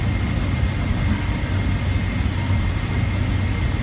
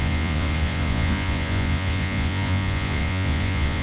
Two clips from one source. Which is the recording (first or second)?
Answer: first